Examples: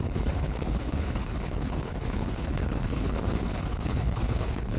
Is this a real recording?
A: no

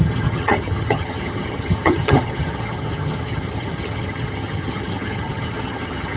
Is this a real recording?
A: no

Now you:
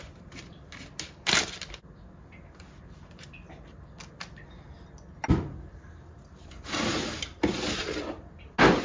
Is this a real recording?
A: yes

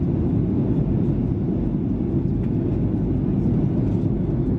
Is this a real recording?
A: yes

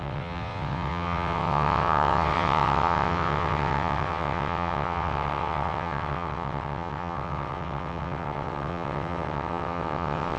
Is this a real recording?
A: no